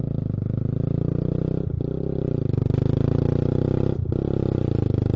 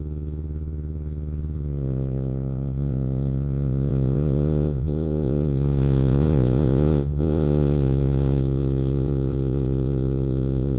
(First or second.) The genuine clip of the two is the first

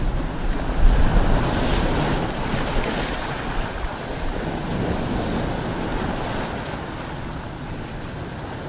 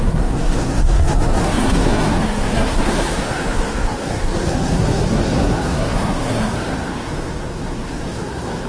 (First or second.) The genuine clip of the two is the first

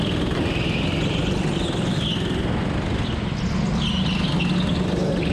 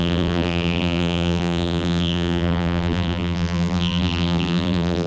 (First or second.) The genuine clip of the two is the first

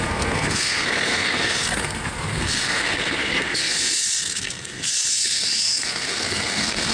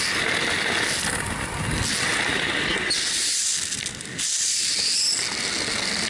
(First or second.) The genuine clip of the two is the second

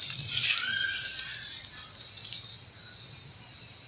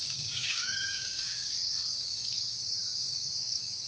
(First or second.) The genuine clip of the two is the first